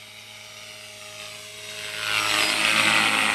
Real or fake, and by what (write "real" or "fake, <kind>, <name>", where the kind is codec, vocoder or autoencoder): real